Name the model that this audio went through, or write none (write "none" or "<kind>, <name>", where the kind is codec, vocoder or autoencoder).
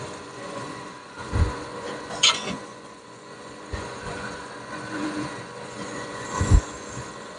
vocoder, Vocos